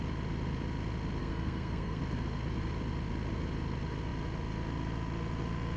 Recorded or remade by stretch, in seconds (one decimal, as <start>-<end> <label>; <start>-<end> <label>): 0.0-1.2 recorded; 1.2-2.0 remade; 2.0-5.8 recorded